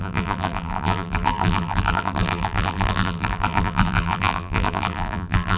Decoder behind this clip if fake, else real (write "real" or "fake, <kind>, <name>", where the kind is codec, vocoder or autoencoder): fake, vocoder, BigVGAN v2